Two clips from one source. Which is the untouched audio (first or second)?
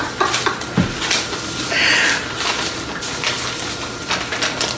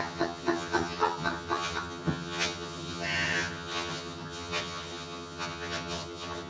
first